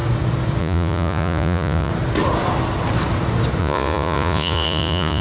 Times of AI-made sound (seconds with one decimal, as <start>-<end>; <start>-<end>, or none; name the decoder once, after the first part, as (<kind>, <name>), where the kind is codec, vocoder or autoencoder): 0.6-1.9 (vocoder, Vocos); 3.6-5.2